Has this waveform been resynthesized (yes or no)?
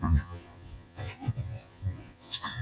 yes